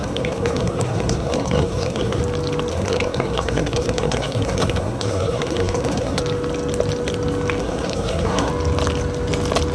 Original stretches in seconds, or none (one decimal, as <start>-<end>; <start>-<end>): 2.2-2.7; 6.2-7.6; 8.5-9.7